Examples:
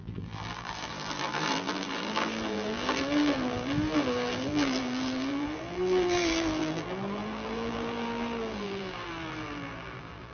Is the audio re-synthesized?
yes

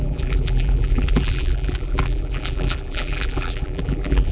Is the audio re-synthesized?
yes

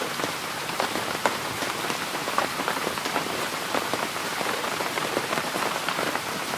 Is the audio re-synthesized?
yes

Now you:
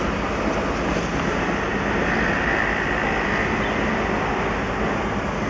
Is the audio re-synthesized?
no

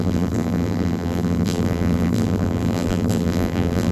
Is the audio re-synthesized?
yes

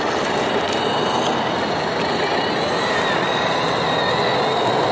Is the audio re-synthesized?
no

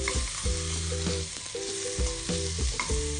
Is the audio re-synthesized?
no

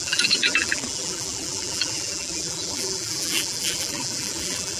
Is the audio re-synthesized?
yes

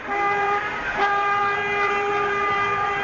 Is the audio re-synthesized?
yes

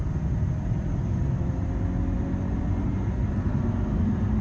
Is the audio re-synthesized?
yes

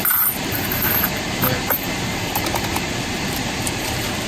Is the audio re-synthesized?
yes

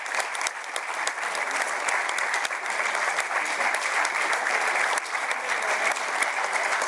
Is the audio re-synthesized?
yes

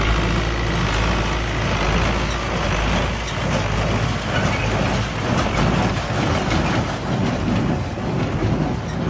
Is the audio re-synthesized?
no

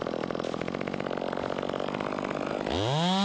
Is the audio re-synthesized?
no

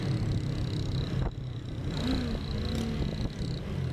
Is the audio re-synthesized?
no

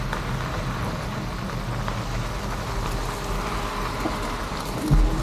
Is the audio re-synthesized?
no